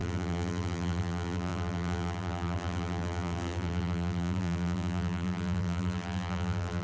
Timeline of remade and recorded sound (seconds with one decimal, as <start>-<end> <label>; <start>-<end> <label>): 0.0-6.8 remade